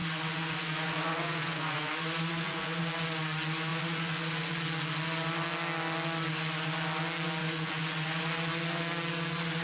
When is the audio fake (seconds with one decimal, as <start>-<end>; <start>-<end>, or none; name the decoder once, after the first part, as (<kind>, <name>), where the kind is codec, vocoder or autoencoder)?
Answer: 0.0-2.8 (vocoder, Vocos); 3.7-4.5; 7.4-8.2